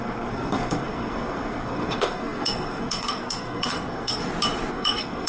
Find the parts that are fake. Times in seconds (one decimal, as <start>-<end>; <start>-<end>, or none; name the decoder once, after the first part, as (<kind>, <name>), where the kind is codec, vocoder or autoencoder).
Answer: 0.0-4.2 (codec, SNAC); 4.7-5.3